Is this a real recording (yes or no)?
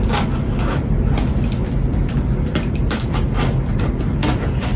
yes